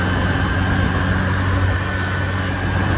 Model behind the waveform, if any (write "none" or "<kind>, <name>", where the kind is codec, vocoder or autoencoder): none